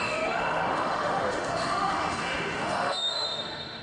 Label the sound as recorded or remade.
remade